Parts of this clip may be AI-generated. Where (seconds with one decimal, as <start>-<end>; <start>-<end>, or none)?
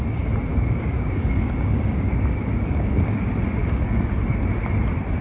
0.5-3.2; 3.6-4.1